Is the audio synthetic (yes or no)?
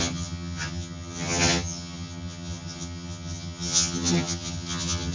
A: yes